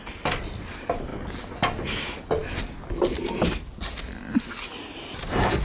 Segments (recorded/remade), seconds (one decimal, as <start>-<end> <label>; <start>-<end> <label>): 0.0-5.6 recorded